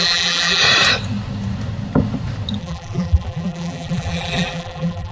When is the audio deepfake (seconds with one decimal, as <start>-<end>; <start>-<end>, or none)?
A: 0.0-0.6; 2.6-5.1